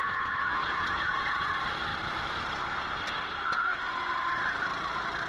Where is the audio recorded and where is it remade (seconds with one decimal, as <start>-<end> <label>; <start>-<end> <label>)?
0.0-1.5 remade; 1.5-5.3 recorded